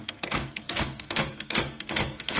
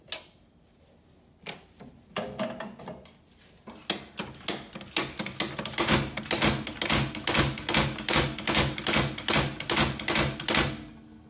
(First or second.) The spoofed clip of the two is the first